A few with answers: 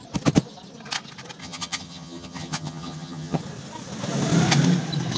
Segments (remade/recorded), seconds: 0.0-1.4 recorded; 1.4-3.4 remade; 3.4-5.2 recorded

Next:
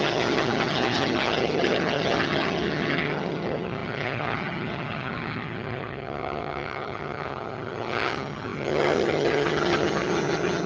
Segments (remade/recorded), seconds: 0.0-10.7 remade